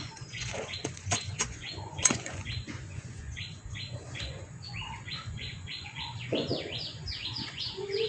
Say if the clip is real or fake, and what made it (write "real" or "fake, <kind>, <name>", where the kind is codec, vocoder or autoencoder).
fake, vocoder, Vocos